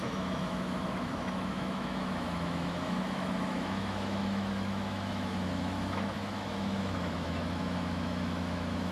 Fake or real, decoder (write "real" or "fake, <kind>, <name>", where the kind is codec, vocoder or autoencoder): fake, autoencoder, DAC-VAE